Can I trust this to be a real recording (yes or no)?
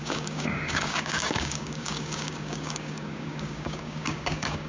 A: no